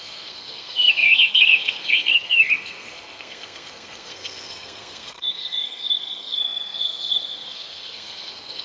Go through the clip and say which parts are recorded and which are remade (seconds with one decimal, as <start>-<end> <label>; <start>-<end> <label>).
0.0-8.6 remade